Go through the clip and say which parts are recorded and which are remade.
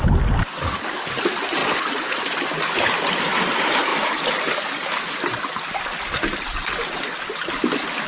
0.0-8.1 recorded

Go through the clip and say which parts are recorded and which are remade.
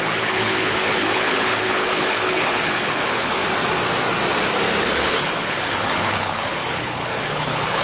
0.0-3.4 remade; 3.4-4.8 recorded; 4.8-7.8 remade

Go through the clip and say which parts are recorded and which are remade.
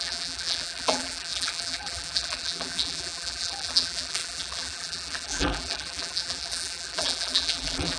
0.0-8.0 remade